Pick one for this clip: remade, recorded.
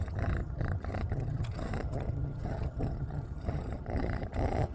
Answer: remade